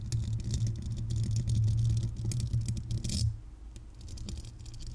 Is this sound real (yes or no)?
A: yes